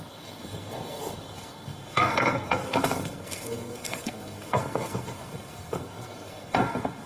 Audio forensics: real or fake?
fake